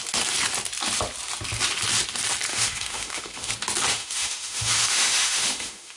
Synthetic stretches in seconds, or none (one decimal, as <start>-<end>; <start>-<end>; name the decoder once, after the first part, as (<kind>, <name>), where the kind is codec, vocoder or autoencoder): 2.5-3.5 (autoencoder, DAC-VAE); 3.9-6.0

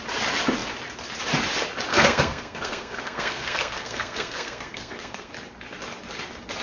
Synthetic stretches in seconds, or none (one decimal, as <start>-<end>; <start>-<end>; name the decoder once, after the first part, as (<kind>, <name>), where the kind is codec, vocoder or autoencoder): 1.9-5.3 (codec, SNAC)